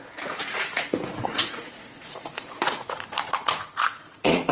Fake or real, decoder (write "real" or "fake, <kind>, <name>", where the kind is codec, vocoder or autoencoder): fake, vocoder, Vocos